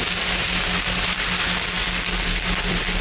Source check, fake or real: real